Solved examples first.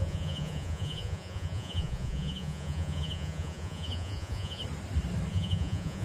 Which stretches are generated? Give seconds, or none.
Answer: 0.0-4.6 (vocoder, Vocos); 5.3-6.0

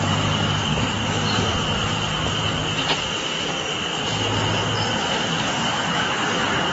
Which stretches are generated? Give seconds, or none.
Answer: 0.0-1.0 (codec, DAC); 5.0-6.7

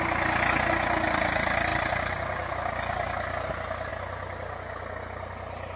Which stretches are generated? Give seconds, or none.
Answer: 1.7-2.5 (vocoder, BigVGAN v2)

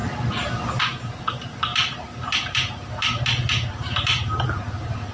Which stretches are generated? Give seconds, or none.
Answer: none

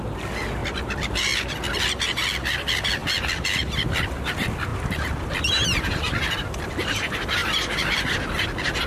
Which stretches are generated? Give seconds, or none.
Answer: 0.6-1.2 (vocoder, BigVGAN v2); 3.0-4.2; 7.4-8.4

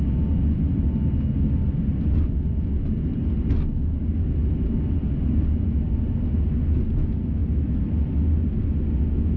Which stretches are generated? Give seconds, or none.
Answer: none

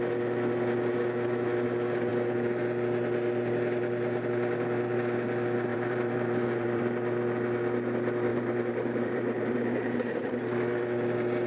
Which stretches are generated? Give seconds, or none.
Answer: 5.7-6.8 (vocoder, BigVGAN v2); 8.3-10.3